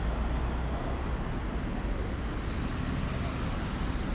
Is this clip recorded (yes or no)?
yes